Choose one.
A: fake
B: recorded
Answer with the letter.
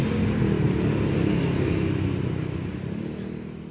B